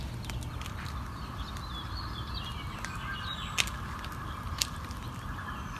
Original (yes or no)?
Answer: yes